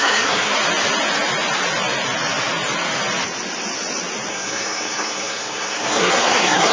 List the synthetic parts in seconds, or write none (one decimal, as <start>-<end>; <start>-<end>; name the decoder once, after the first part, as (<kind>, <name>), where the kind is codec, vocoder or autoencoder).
0.0-0.5 (codec, SNAC); 4.3-6.7